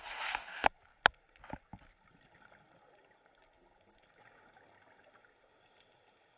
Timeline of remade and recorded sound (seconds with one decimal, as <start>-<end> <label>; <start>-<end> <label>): 0.0-6.4 recorded